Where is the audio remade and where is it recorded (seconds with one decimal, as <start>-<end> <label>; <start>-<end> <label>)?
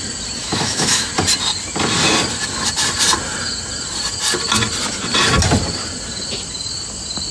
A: 0.0-0.4 recorded; 0.4-1.1 remade; 1.1-7.3 recorded